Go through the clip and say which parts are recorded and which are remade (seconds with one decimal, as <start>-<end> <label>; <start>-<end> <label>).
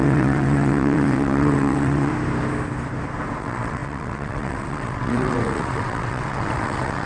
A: 0.0-2.1 remade; 2.1-3.4 recorded; 3.4-7.1 remade